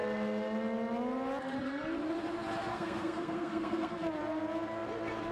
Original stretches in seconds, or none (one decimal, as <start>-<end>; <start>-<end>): 0.0-2.7; 4.2-5.3